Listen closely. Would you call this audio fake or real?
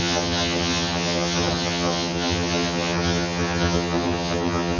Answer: fake